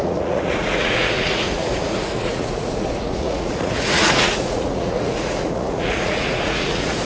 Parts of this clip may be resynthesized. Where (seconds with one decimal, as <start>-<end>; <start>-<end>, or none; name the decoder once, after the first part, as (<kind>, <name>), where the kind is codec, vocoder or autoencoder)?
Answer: 0.0-7.0 (vocoder, Vocos)